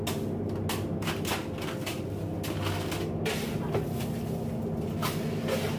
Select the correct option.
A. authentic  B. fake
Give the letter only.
A